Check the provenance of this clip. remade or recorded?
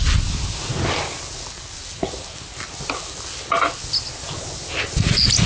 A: recorded